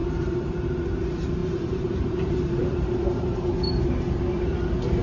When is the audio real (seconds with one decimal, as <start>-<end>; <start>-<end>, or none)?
0.5-1.4; 4.2-5.0